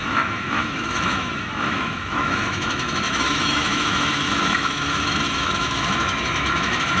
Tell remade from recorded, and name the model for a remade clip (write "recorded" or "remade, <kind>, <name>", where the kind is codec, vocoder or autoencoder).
remade, autoencoder, DAC-VAE